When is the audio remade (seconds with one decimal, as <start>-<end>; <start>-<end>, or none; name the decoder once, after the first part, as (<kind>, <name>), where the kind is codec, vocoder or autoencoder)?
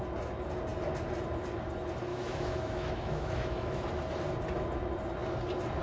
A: 2.1-3.9 (autoencoder, DAC-VAE)